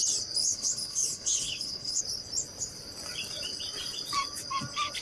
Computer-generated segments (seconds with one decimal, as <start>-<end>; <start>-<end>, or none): 0.4-2.0